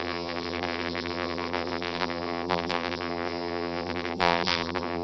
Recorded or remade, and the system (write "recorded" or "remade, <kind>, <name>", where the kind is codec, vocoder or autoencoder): remade, vocoder, BigVGAN v2